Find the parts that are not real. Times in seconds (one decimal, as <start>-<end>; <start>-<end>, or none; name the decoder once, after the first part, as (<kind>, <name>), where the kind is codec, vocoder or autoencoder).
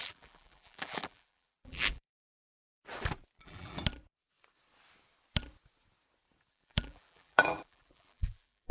0.0-2.3 (vocoder, BigVGAN v2); 3.4-3.8; 6.5-8.7